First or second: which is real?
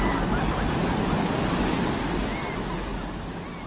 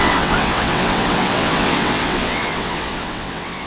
first